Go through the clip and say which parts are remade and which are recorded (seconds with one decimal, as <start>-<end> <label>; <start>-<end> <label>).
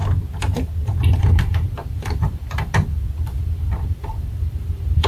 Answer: 0.0-1.2 recorded; 1.2-5.1 remade